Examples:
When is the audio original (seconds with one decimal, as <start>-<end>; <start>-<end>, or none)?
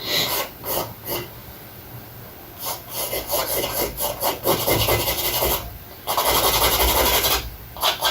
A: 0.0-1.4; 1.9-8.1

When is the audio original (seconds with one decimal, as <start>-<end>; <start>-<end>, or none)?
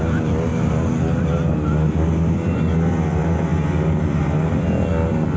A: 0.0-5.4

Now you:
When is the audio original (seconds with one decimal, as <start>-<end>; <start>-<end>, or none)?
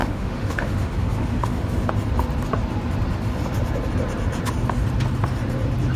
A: 1.9-6.0